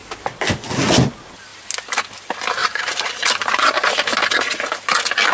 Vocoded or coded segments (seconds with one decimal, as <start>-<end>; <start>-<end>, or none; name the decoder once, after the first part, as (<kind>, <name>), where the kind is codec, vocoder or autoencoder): 2.6-4.1 (vocoder, BigVGAN v2)

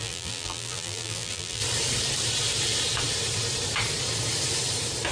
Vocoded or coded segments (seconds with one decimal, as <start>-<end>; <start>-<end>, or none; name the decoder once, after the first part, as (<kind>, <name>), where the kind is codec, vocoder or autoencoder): 0.0-1.6 (vocoder, BigVGAN v2)

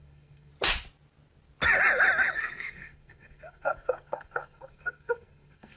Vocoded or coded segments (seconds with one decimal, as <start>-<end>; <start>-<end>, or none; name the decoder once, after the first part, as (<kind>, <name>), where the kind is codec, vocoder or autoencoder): 0.0-0.5 (codec, SNAC); 2.3-5.8

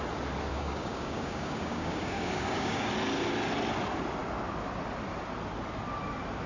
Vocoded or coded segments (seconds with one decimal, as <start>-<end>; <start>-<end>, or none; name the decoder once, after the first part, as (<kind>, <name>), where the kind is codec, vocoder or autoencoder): 0.5-2.9 (codec, DAC)